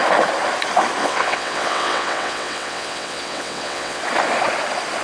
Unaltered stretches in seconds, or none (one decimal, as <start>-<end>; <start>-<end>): 0.0-1.0; 4.0-5.0